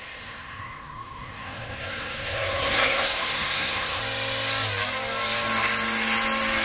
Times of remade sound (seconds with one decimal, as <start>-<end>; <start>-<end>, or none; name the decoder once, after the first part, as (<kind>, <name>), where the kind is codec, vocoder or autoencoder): 0.0-4.0 (codec, SNAC)